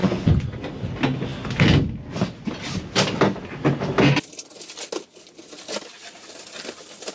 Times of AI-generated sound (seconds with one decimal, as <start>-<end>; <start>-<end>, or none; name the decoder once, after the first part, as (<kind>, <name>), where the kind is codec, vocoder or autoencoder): 0.0-0.7 (vocoder, Vocos)